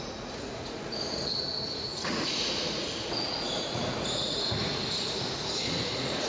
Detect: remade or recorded remade